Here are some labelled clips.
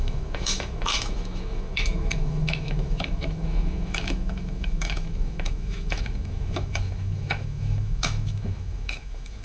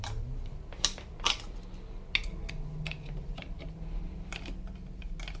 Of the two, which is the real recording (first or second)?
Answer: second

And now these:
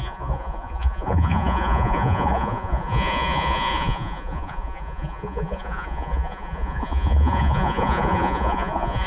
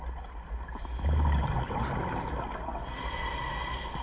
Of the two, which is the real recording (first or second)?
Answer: second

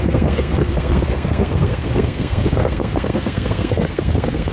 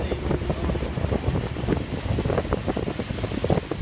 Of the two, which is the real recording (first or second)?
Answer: second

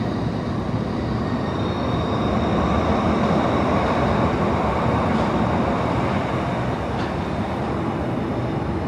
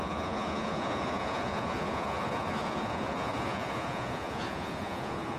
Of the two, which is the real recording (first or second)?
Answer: first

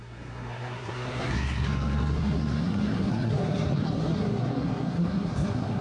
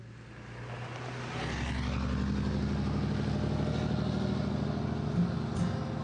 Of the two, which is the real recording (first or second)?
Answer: second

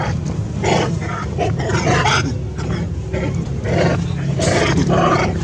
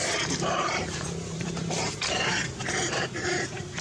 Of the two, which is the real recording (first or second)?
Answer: first